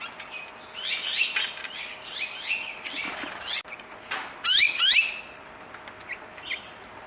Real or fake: real